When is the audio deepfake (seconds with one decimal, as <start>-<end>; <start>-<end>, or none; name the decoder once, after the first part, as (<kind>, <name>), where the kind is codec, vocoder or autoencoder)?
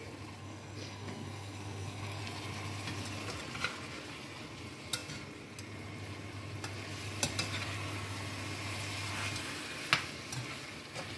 0.4-2.2 (codec, SNAC)